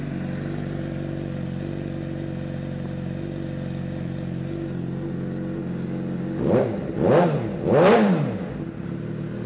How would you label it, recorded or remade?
recorded